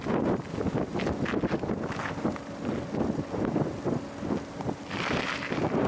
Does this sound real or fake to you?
real